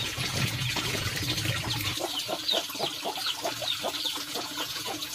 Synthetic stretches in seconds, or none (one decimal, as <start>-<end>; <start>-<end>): 0.0-1.1; 4.2-5.1

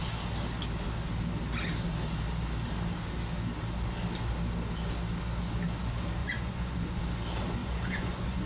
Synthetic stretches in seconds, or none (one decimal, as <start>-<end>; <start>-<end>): 6.2-7.0; 7.6-8.5

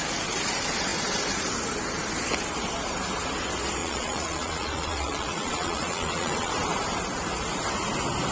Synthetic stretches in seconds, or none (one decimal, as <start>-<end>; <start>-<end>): 3.8-6.5

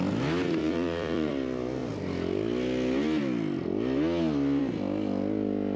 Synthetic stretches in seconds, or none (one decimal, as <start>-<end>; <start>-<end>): 0.6-1.3

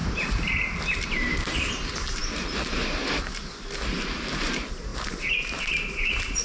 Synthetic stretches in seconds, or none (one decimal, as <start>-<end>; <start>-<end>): none